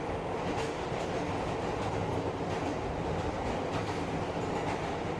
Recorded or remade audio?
recorded